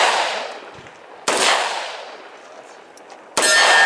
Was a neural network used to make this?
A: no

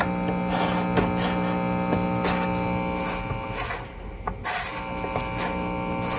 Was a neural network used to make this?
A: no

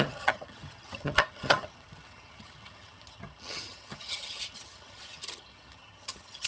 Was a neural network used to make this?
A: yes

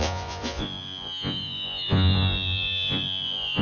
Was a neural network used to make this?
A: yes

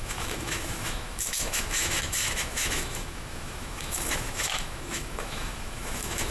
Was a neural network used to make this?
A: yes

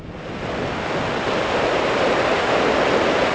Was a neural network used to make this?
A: no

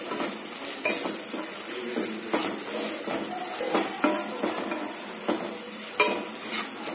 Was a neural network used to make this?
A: no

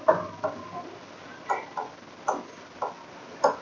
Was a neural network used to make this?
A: no